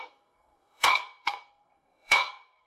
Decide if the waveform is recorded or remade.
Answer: remade